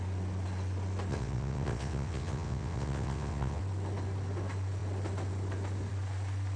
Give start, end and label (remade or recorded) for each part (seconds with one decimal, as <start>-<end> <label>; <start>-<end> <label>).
0.0-1.1 recorded; 1.1-3.6 remade; 3.6-6.6 recorded